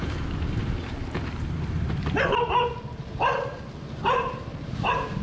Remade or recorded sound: remade